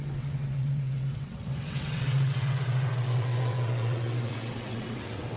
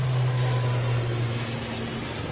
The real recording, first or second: second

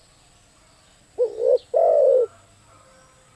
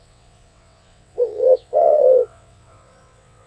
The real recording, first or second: first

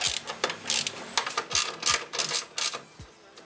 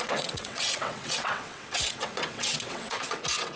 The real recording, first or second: first